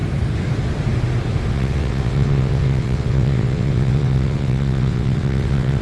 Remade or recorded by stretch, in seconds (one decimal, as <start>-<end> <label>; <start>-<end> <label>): 0.0-1.5 recorded; 1.5-5.8 remade